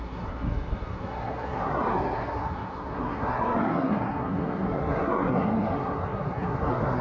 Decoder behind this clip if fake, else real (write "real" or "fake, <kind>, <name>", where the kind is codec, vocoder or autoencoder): fake, codec, SNAC